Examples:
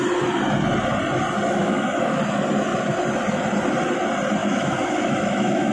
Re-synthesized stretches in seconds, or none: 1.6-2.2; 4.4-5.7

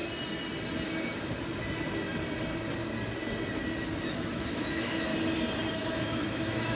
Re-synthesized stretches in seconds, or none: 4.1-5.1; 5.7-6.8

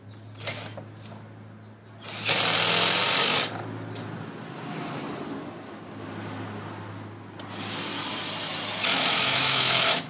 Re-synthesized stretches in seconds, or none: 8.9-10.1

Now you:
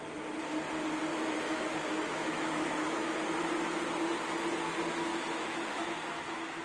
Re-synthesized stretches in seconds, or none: 1.1-3.1; 5.1-6.6

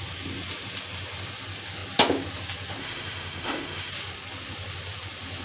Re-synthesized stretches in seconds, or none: 2.8-3.9

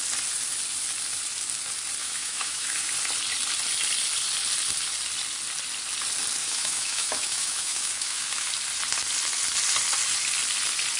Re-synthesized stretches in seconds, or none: 2.0-2.9; 6.4-8.5

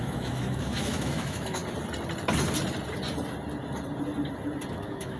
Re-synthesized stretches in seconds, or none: 0.0-1.6; 4.7-5.2